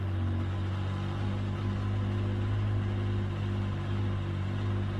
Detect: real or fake real